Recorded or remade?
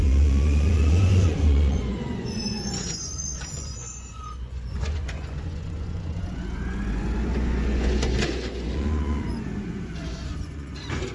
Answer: remade